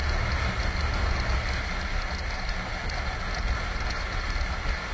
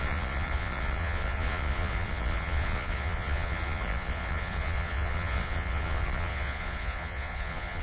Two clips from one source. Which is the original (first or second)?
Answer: first